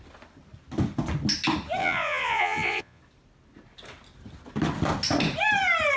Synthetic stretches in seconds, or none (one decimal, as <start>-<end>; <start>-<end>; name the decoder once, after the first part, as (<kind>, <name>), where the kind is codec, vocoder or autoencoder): 1.8-3.0 (vocoder, Vocos)